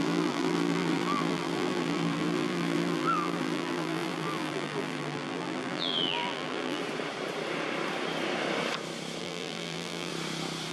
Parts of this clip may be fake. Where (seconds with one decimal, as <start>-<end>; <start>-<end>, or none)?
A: 0.0-6.8; 9.2-10.1